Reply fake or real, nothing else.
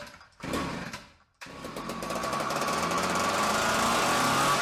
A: real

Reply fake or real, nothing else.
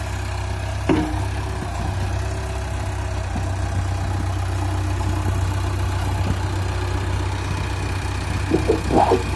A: real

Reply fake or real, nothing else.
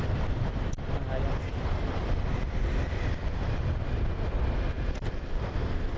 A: real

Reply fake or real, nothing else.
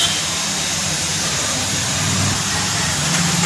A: fake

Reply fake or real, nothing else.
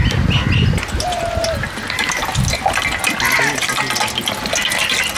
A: real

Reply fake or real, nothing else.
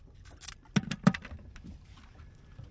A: real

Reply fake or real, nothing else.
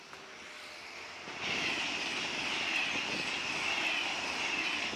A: real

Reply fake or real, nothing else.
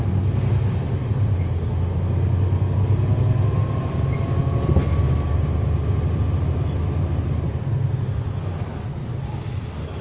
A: real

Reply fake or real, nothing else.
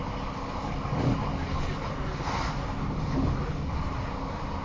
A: real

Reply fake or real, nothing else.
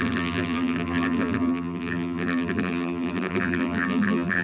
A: fake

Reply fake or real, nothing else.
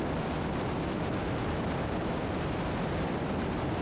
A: real